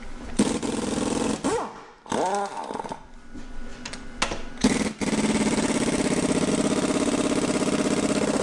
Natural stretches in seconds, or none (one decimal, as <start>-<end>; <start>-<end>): 0.0-8.4